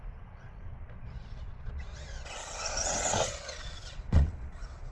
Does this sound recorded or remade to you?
remade